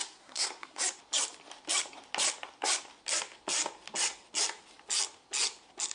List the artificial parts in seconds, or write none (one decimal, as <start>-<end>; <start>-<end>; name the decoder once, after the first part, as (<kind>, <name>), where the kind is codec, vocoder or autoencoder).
0.0-0.8 (codec, SNAC)